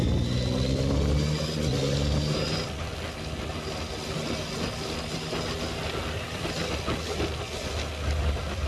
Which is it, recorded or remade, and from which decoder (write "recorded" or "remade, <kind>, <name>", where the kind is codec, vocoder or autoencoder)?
recorded